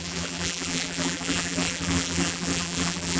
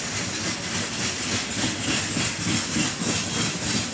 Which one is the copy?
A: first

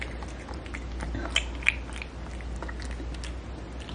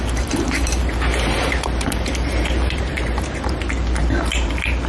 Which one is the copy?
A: second